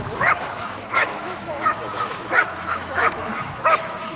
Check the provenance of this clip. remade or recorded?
remade